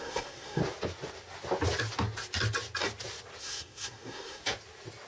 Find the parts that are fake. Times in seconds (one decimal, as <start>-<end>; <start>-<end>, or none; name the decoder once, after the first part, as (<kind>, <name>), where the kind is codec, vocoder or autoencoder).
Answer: 0.0-0.6 (codec, SNAC); 3.4-4.4